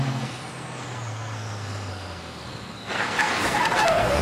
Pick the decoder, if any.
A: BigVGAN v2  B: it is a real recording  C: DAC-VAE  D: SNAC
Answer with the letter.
D